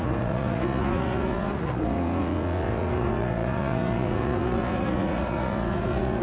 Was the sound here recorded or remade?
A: remade